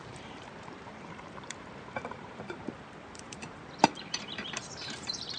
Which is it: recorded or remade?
remade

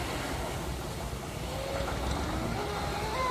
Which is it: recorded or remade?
recorded